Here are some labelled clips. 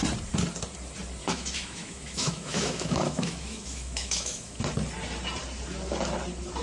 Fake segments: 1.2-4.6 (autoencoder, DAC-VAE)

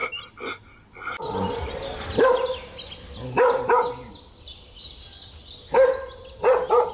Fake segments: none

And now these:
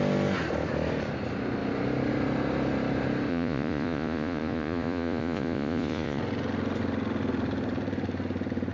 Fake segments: 3.3-6.2 (vocoder, Vocos)

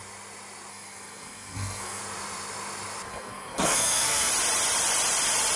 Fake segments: 0.7-2.0 (codec, SNAC); 3.1-4.3

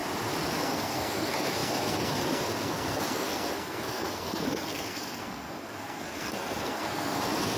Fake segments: 0.6-7.6 (codec, SNAC)

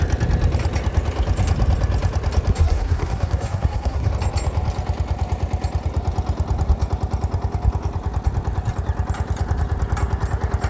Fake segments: 2.5-4.1 (codec, SNAC)